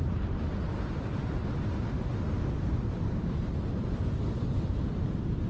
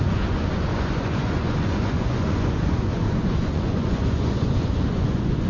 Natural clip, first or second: first